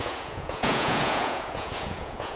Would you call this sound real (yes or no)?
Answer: no